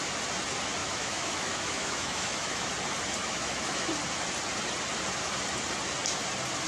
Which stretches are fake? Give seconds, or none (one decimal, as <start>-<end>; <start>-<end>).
0.8-2.7; 3.2-3.9